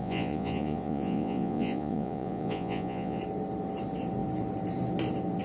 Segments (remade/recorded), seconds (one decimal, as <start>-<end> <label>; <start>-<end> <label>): 0.0-3.2 remade; 3.2-5.4 recorded